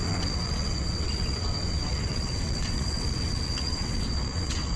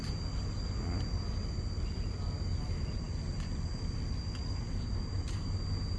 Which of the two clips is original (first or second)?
second